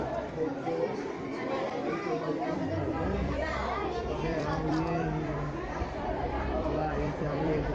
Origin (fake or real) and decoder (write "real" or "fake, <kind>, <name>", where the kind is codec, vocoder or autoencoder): fake, vocoder, BigVGAN v2